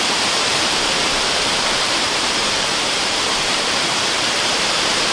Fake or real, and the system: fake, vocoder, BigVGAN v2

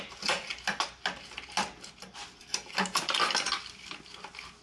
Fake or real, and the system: real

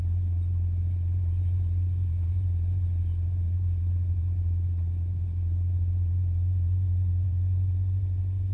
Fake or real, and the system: fake, vocoder, BigVGAN v2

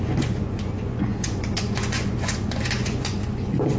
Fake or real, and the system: fake, vocoder, Vocos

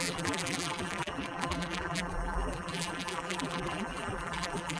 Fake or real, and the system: fake, vocoder, BigVGAN v2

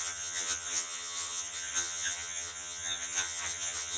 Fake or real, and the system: fake, vocoder, HiFi-GAN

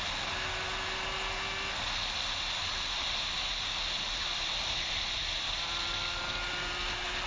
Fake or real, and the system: real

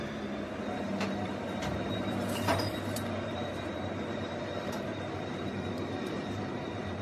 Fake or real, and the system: fake, vocoder, BigVGAN v2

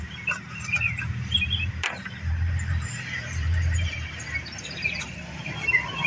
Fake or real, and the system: fake, vocoder, BigVGAN v2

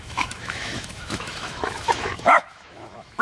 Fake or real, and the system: fake, autoencoder, DAC-VAE